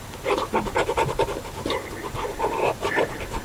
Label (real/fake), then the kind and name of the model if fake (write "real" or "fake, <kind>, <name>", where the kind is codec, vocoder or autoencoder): fake, vocoder, BigVGAN v2